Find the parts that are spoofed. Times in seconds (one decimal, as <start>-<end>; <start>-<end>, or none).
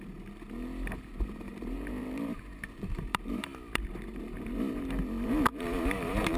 1.1-3.3; 5.5-6.4